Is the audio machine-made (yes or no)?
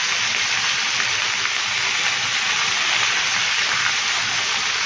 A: no